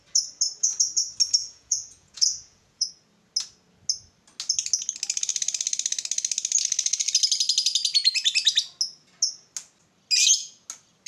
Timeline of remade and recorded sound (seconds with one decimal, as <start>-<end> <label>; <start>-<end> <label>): 0.0-1.4 recorded; 1.4-2.9 remade; 2.9-11.1 recorded